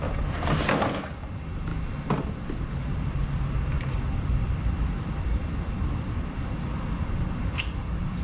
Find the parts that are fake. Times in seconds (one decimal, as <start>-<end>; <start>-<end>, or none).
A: 0.0-8.2